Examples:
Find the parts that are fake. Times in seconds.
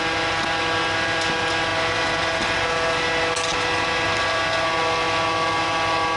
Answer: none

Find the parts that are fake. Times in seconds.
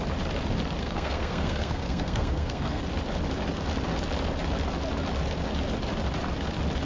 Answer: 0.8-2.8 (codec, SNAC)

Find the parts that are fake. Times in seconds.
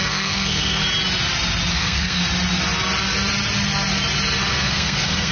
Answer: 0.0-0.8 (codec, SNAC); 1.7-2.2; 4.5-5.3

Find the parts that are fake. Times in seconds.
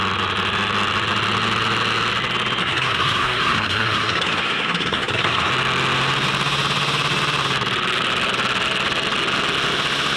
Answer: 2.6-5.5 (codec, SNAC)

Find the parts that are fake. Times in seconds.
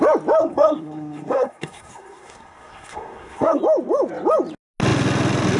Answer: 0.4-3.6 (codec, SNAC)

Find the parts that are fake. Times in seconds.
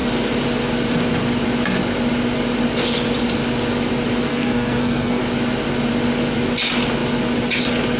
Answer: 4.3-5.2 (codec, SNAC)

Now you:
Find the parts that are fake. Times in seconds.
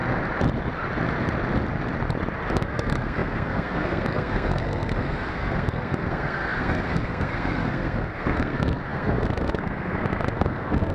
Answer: 2.5-10.9 (codec, SNAC)